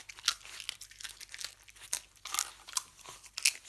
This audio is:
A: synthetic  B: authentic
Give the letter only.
B